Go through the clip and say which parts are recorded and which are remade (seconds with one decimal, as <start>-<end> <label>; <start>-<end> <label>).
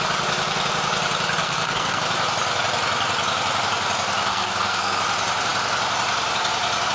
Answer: 0.0-1.4 recorded; 1.4-2.0 remade; 2.0-4.3 recorded; 4.3-5.0 remade; 5.0-6.9 recorded